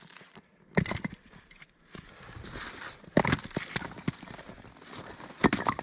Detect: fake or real real